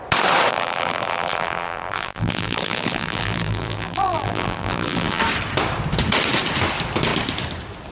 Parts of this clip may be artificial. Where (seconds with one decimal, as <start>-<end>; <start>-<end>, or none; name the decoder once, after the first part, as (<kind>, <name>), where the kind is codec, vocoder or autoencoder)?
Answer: 0.5-5.2 (vocoder, BigVGAN v2)